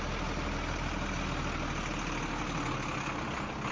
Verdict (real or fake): real